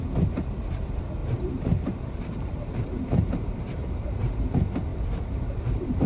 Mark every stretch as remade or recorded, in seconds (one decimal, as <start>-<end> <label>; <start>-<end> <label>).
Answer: 0.0-1.2 recorded; 1.2-4.4 remade; 4.4-4.9 recorded; 4.9-6.1 remade